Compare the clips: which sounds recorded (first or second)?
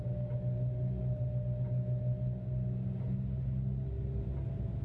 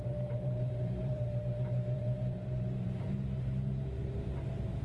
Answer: first